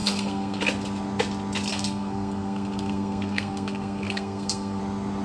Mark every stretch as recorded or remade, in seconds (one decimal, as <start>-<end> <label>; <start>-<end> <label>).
0.0-0.6 remade; 0.6-1.7 recorded; 1.7-4.8 remade; 4.8-5.2 recorded